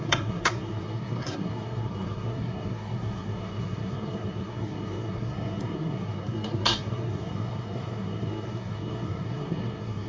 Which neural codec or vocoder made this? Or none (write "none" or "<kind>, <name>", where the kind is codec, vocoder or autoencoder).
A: codec, SNAC